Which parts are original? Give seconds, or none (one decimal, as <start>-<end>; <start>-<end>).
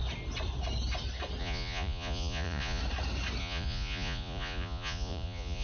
0.0-1.4; 2.8-3.4